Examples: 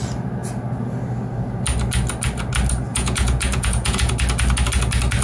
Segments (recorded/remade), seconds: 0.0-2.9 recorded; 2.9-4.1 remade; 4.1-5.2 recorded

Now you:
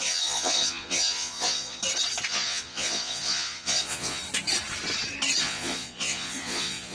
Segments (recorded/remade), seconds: 0.0-1.8 remade; 1.8-2.3 recorded; 2.3-4.2 remade; 4.2-5.4 recorded; 5.4-6.9 remade